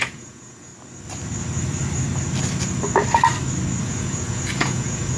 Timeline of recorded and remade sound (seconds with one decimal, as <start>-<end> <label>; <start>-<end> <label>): 0.0-0.7 remade; 0.7-3.8 recorded; 3.8-5.2 remade